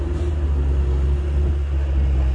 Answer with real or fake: real